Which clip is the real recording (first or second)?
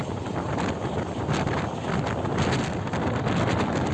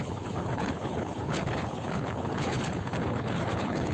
first